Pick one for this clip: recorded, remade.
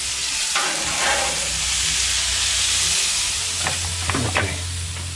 recorded